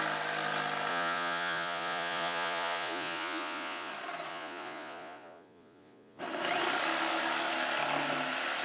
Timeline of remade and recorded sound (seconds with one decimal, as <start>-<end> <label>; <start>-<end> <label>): 0.0-0.9 recorded; 0.9-3.9 remade; 3.9-4.3 recorded; 4.3-6.2 remade; 6.2-8.6 recorded